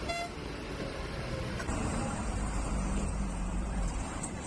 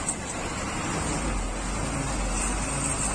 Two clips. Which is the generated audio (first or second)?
first